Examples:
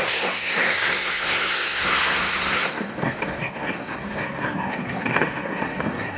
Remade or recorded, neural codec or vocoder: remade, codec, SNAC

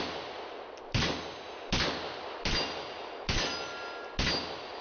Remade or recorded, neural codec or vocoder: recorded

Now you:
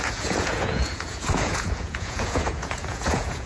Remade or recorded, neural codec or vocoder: remade, vocoder, Vocos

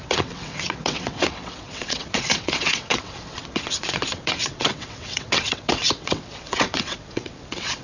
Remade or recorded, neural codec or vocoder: remade, vocoder, WaveNeXt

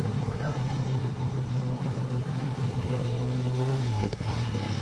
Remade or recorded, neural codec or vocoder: remade, codec, SNAC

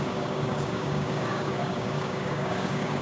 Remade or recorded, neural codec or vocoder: remade, codec, DAC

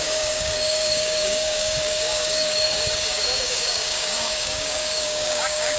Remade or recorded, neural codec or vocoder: remade, codec, DAC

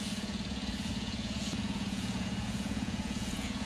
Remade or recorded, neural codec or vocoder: remade, vocoder, Vocos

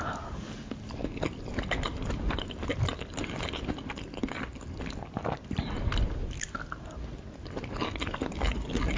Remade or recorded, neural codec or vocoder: recorded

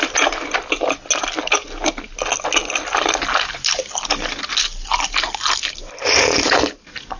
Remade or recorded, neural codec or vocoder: recorded